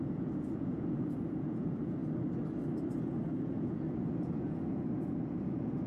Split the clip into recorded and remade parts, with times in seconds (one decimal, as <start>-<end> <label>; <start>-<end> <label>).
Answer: 0.0-2.0 remade; 2.0-3.4 recorded; 3.4-5.9 remade